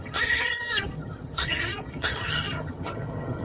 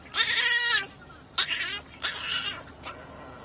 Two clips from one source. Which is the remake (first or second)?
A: first